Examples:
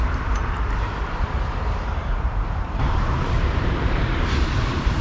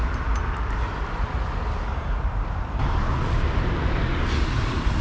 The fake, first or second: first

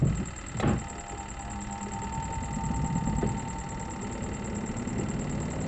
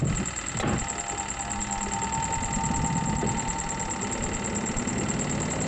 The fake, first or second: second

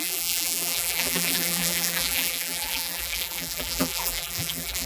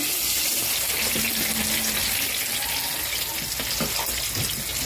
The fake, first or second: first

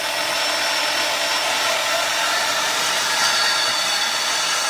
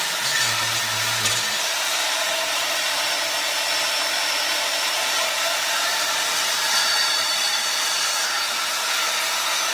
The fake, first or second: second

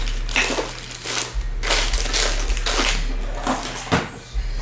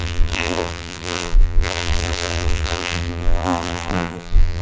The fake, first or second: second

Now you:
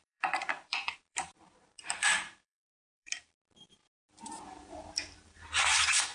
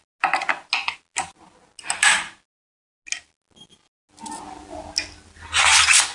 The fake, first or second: first